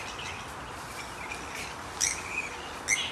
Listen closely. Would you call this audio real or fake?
real